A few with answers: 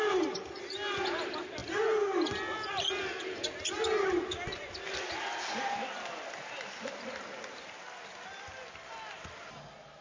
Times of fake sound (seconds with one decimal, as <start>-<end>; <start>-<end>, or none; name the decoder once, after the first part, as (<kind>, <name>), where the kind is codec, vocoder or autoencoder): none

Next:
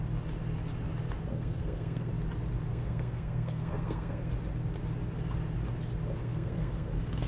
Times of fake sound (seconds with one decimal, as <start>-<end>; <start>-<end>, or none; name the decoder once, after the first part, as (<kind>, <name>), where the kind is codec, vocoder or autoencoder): 1.3-2.1 (codec, SNAC); 2.7-4.3; 6.2-7.3

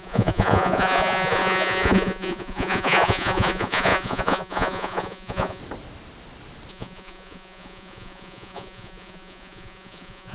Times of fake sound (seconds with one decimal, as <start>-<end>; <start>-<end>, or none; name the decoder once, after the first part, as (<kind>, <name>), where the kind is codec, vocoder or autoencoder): 0.0-5.6 (vocoder, Vocos); 6.7-10.3